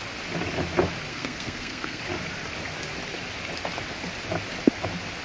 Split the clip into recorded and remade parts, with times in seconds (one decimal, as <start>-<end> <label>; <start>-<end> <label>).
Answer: 0.0-1.1 recorded; 1.1-2.0 remade; 2.0-5.2 recorded